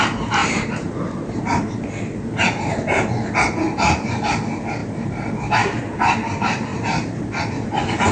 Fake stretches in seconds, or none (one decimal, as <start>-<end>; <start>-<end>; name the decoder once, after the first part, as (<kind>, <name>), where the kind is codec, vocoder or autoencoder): 0.4-1.8 (vocoder, BigVGAN v2); 3.7-4.3; 4.8-5.8; 6.7-7.3